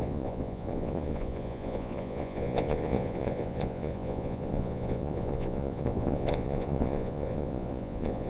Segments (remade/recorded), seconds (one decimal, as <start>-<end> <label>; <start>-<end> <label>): 0.0-8.3 remade